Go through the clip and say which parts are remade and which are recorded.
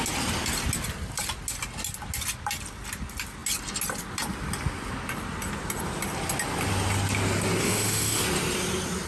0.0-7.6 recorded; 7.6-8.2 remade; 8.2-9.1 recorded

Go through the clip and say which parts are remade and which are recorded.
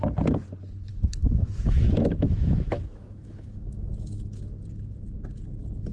0.0-0.9 recorded; 0.9-4.4 remade; 4.4-5.9 recorded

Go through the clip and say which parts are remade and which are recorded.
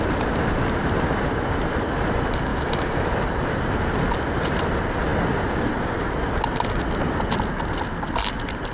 0.0-2.5 recorded; 2.5-3.1 remade; 3.1-8.7 recorded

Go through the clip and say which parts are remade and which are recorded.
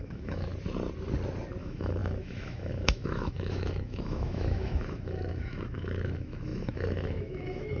0.0-0.5 remade; 0.5-1.6 recorded; 1.6-7.8 remade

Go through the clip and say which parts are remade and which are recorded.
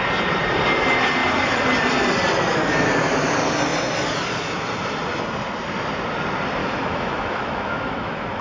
0.0-6.6 recorded; 6.6-8.4 remade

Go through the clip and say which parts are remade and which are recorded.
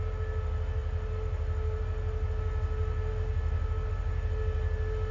0.0-5.1 recorded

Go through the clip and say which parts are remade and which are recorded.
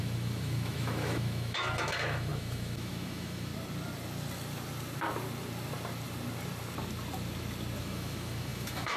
0.0-3.5 remade; 3.5-7.8 recorded; 7.8-9.0 remade